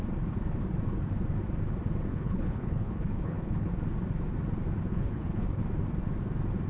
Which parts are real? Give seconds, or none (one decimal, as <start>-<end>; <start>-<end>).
0.0-2.1; 3.7-4.9; 5.6-6.7